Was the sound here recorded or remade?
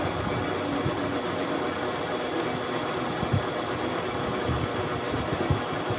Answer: recorded